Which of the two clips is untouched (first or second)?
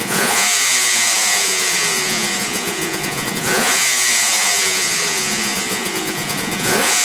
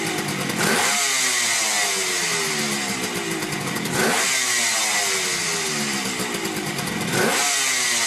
second